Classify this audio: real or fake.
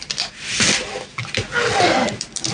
real